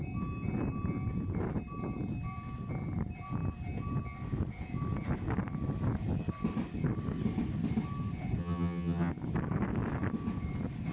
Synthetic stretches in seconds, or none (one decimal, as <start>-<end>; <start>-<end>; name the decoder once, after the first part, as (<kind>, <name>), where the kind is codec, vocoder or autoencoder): 8.4-9.1 (vocoder, HiFi-GAN)